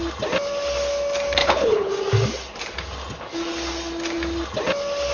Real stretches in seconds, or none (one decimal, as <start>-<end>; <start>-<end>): 0.0-1.4; 1.9-5.1